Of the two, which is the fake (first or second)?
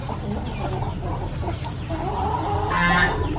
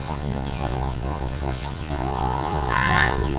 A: second